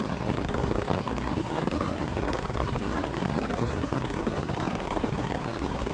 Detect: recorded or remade remade